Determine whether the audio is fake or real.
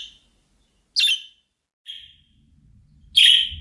real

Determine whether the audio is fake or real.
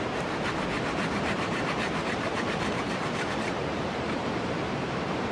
fake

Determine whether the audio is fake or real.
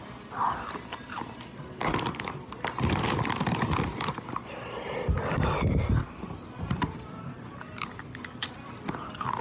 real